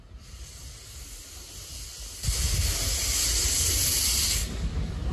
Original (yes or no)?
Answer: yes